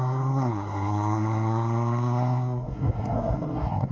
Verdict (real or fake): fake